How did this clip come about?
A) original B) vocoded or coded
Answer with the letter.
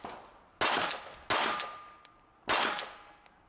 A